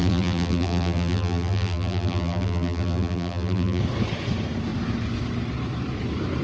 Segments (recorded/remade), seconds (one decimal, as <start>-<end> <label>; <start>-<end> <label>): 0.0-3.8 remade; 3.8-6.4 recorded